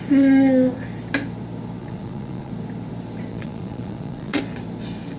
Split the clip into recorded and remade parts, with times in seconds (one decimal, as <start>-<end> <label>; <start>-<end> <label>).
0.0-1.8 recorded; 1.8-2.5 remade; 2.5-3.3 recorded; 3.3-4.4 remade; 4.4-5.2 recorded